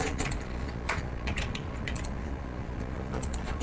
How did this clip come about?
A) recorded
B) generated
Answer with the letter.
B